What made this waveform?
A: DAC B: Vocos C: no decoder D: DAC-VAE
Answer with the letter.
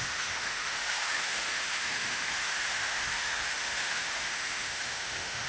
D